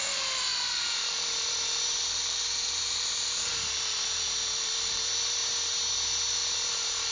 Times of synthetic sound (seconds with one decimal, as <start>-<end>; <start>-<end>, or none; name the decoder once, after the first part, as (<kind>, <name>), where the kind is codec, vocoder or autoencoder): 0.0-5.4 (vocoder, BigVGAN v2); 5.9-7.1